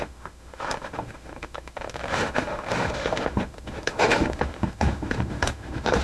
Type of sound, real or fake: fake